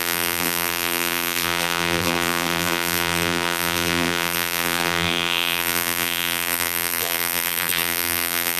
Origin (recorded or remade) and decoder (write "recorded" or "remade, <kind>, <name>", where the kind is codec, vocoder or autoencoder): remade, vocoder, BigVGAN v2